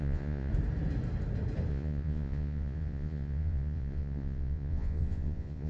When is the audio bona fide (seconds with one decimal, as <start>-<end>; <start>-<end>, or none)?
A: 0.5-1.7